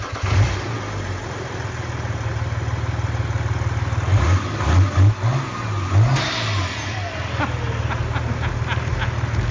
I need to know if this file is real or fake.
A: real